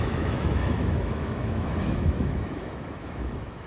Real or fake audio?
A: fake